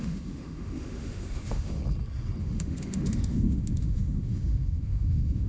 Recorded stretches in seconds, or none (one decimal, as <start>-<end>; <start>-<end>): 1.8-2.4